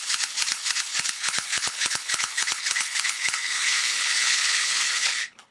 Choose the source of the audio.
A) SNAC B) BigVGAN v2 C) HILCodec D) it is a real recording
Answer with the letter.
C